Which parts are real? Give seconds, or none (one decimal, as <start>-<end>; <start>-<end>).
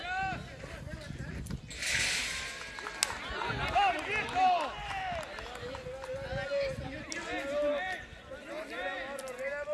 0.0-9.7